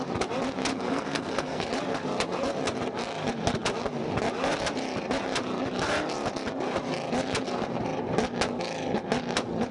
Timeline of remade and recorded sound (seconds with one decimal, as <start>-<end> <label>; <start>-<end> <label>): 0.0-0.7 recorded; 0.7-1.7 remade; 1.7-9.7 recorded